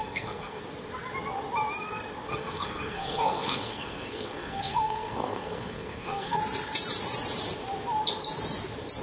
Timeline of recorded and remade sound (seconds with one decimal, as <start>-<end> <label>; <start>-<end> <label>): 0.0-0.6 remade; 0.6-2.3 recorded; 2.3-6.4 remade; 6.4-9.0 recorded